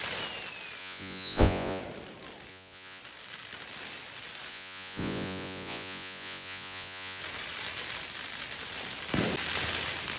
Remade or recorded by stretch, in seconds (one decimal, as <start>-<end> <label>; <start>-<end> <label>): 0.0-0.8 recorded; 0.8-1.8 remade; 1.8-2.5 recorded; 2.5-3.0 remade; 3.0-4.5 recorded; 4.5-7.2 remade; 7.2-10.2 recorded